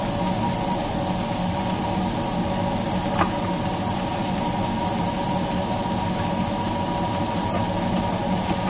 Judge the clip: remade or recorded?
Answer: recorded